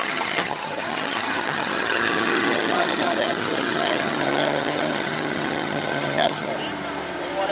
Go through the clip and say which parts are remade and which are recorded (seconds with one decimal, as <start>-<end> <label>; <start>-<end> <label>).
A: 0.0-6.5 remade; 6.5-7.5 recorded